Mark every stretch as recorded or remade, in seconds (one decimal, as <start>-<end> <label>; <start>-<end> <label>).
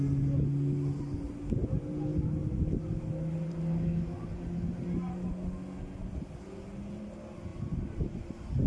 0.0-8.7 recorded